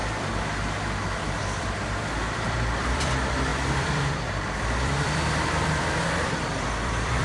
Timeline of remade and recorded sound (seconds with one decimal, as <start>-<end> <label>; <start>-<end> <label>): 0.0-1.2 recorded; 1.2-7.2 remade